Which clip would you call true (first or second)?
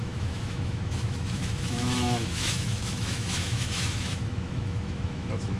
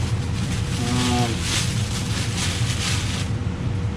second